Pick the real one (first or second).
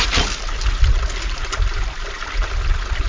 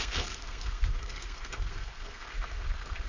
first